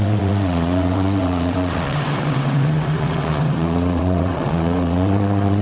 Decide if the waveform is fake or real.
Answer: fake